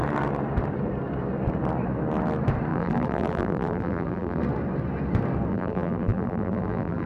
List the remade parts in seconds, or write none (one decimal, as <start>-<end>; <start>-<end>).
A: 2.7-4.4; 5.5-7.1